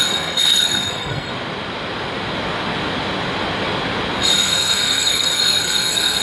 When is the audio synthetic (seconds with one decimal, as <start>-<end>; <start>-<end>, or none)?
0.0-1.3; 4.4-6.2